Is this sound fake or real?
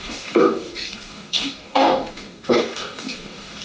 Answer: fake